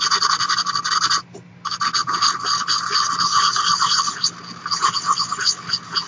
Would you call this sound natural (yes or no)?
yes